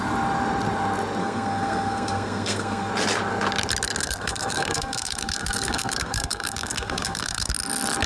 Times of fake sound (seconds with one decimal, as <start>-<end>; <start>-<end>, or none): 1.2-2.9; 4.0-7.5